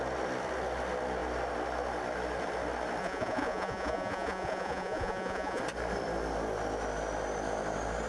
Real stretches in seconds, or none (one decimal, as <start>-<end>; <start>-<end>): 0.0-3.0; 5.6-8.1